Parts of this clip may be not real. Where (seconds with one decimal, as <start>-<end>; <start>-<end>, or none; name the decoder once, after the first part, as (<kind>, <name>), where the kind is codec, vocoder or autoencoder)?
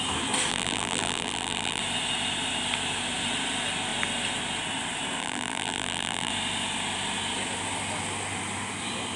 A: 0.5-1.8 (vocoder, BigVGAN v2); 5.2-6.3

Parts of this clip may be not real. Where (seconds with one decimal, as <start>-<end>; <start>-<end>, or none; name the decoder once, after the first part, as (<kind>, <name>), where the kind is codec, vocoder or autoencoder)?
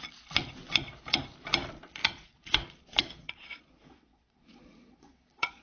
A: 2.0-5.6 (vocoder, Vocos)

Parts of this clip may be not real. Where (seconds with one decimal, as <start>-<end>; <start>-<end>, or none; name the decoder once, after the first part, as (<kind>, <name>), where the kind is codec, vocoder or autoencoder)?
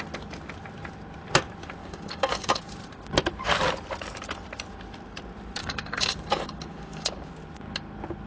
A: 1.8-2.6 (codec, DAC); 5.6-7.3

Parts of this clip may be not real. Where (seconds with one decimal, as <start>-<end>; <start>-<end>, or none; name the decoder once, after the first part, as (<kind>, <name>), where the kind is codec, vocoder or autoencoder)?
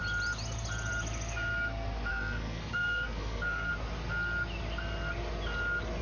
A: 2.1-3.7 (codec, SNAC)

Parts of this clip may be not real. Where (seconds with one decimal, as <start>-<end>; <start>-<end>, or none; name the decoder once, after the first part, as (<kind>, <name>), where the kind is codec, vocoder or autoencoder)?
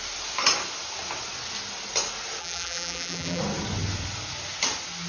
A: 2.4-3.4 (vocoder, BigVGAN v2)